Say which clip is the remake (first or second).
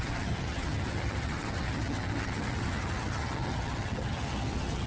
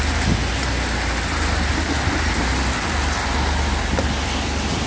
first